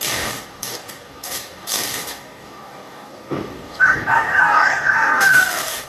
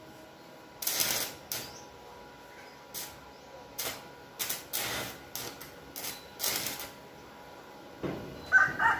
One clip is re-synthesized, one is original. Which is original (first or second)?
second